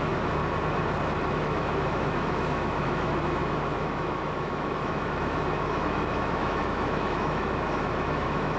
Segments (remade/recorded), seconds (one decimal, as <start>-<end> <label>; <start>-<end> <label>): 0.0-0.4 remade; 0.4-1.3 recorded; 1.3-8.6 remade